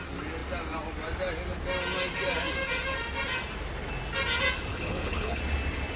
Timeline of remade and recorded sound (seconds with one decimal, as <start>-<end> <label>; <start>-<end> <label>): 0.0-4.7 recorded; 4.7-5.4 remade; 5.4-6.0 recorded